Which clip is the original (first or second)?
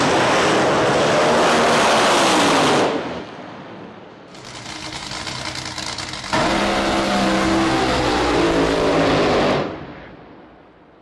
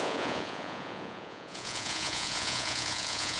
first